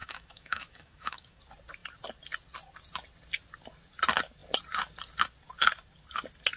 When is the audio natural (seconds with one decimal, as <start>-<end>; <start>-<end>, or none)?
1.4-6.6